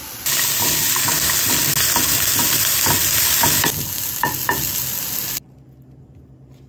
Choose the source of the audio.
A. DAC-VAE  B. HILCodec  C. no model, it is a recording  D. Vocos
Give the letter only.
C